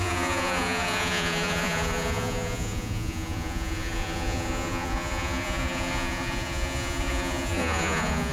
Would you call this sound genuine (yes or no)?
no